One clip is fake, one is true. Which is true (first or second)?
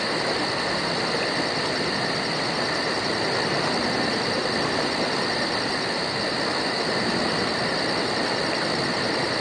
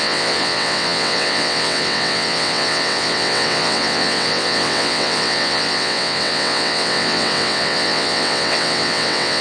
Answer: first